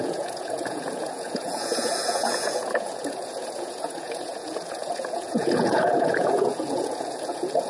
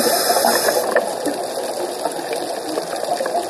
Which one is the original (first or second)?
second